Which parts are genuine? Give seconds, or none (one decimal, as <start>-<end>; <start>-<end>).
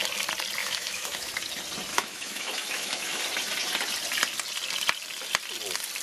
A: 0.0-0.6; 1.3-1.9; 3.2-6.0